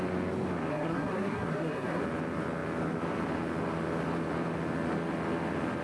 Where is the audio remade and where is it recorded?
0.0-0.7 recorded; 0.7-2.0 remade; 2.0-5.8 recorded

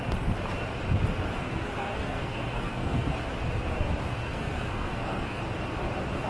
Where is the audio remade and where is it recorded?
0.0-1.4 recorded; 1.4-3.1 remade; 3.1-4.1 recorded; 4.1-5.4 remade; 5.4-6.3 recorded

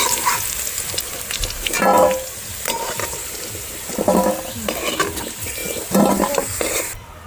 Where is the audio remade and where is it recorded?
0.0-7.3 recorded